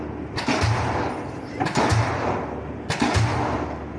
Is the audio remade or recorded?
recorded